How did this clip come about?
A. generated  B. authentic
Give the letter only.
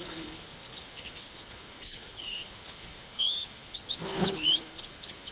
A